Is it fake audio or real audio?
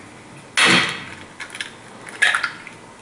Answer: real